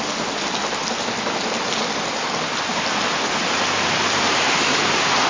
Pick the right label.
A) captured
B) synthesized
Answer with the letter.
A